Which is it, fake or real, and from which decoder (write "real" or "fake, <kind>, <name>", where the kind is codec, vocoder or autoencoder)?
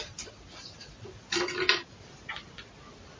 real